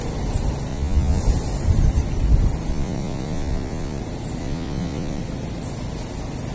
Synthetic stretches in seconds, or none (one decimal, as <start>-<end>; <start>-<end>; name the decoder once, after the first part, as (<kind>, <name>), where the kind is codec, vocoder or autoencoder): 0.7-1.2 (vocoder, Vocos); 2.7-4.0; 4.4-5.2